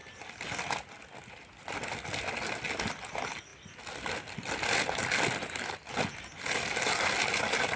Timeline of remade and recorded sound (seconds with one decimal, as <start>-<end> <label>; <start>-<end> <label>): 0.0-7.8 recorded